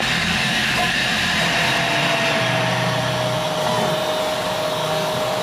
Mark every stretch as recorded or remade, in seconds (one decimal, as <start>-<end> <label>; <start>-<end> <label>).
0.0-1.0 remade; 1.0-4.2 recorded; 4.2-5.4 remade